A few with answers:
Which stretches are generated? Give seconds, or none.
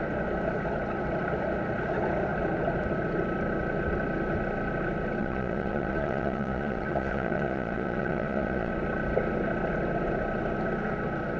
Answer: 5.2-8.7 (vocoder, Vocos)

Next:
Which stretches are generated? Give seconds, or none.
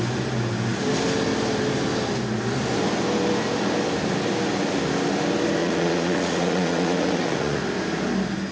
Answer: 5.6-7.6 (vocoder, Vocos)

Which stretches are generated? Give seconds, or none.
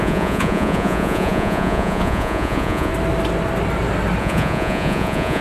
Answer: 0.0-2.9 (vocoder, Vocos); 4.2-5.4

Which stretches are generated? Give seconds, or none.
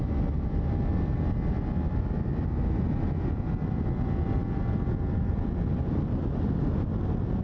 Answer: none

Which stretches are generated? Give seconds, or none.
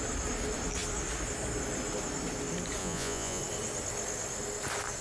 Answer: 2.8-3.4 (vocoder, Vocos)